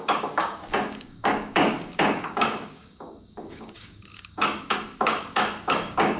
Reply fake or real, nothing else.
fake